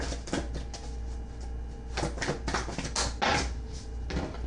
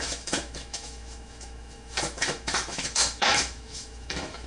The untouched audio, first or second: first